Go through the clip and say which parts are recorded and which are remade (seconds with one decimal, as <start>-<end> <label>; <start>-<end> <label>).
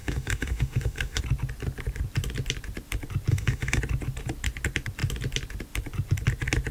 0.0-1.2 remade; 1.2-3.3 recorded; 3.3-3.8 remade; 3.8-6.7 recorded